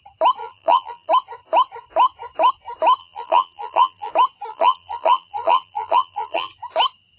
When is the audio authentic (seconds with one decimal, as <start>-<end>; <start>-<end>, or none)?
0.0-0.4; 1.1-3.0; 4.1-4.5; 6.5-7.2